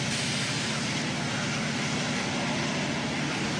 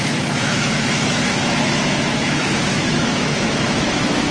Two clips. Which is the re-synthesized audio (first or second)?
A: second